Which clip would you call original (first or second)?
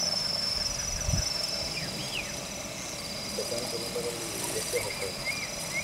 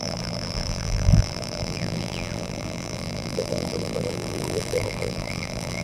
first